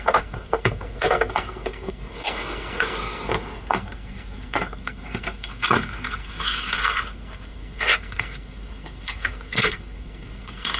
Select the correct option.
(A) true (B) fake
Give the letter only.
B